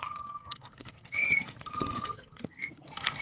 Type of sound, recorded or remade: remade